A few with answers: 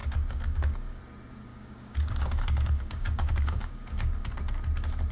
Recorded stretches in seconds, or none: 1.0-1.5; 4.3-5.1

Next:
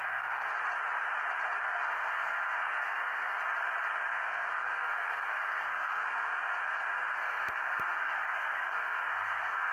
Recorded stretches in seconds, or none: 0.5-1.6; 3.4-4.1

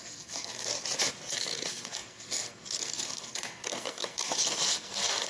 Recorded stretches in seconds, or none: 0.7-1.3

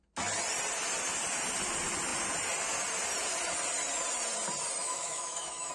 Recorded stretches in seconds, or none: 0.0-4.8

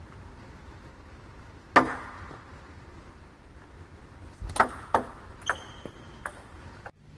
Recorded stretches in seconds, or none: 0.0-7.2